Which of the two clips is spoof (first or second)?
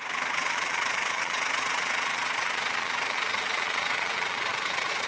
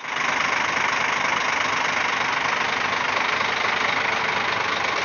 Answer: first